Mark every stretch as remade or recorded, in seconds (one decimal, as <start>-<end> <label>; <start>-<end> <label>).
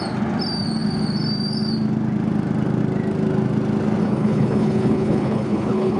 0.0-4.0 recorded; 4.0-6.0 remade